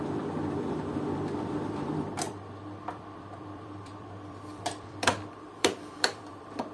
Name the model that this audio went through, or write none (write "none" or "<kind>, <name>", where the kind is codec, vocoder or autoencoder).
vocoder, BigVGAN v2